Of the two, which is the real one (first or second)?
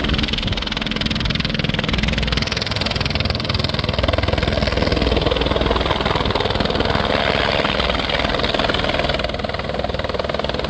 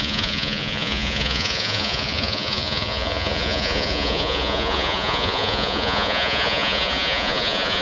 first